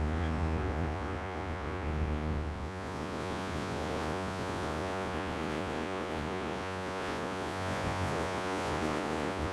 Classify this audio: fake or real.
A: fake